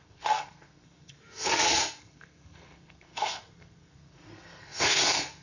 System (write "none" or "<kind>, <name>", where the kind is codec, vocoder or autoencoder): codec, SNAC